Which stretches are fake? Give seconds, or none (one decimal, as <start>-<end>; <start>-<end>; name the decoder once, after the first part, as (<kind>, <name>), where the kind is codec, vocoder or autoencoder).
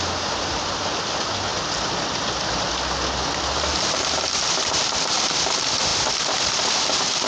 1.5-2.8 (vocoder, BigVGAN v2)